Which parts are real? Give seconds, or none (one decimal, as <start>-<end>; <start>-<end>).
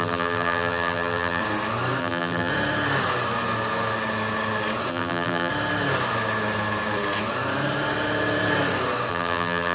1.4-2.0; 2.5-4.9; 5.5-9.1